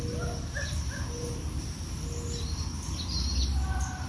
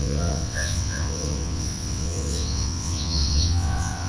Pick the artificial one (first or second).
second